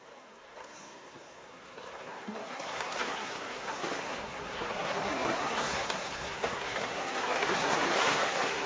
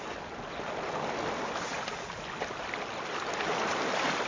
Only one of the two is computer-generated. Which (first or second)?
first